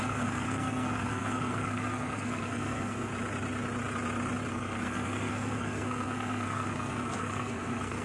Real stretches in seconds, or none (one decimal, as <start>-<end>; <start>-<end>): 3.1-4.5